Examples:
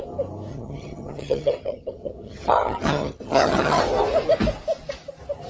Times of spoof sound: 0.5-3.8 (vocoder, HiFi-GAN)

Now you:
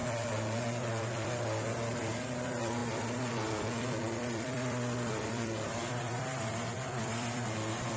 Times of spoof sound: 0.9-8.0 (vocoder, BigVGAN v2)

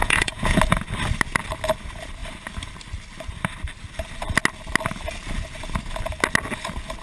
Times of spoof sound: 0.0-0.6 (vocoder, Vocos)

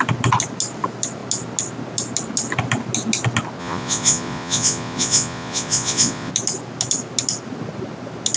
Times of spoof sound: 3.6-6.3 (vocoder, Vocos)

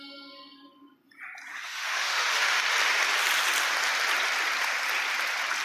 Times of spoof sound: 1.5-2.6 (autoencoder, DAC-VAE)

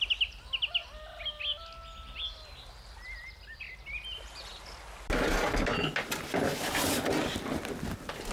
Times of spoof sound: none

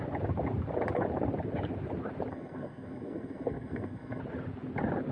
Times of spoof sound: 2.3-4.2 (codec, SNAC)

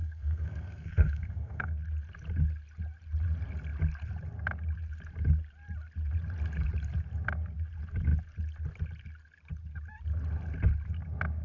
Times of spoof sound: 0.0-1.7 (codec, SNAC)